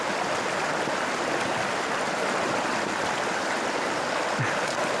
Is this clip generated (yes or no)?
no